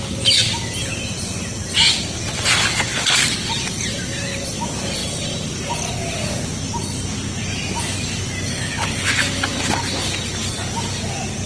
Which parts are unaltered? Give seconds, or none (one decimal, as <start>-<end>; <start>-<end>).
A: 0.0-8.5; 9.1-11.5

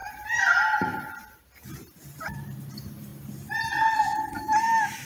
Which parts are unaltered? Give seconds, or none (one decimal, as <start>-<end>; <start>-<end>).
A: none

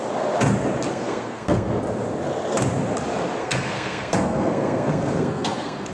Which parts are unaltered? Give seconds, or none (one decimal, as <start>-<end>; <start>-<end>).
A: 0.0-0.9; 1.7-3.4

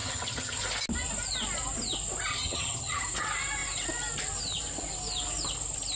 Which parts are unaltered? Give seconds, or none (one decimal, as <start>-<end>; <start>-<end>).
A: 0.6-2.3; 3.0-6.0

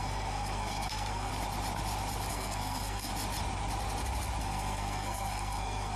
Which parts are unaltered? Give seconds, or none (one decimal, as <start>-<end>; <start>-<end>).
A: 1.3-2.3; 3.1-4.4

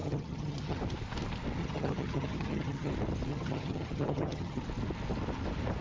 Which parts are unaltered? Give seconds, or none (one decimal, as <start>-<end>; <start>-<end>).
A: 0.8-1.6; 2.9-3.3; 4.6-5.8